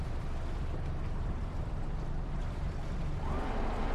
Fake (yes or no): yes